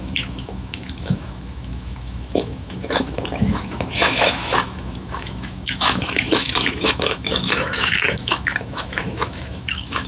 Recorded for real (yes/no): no